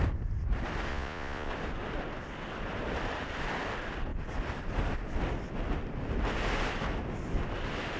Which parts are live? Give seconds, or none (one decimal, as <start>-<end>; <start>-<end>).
0.0-0.9; 1.5-8.0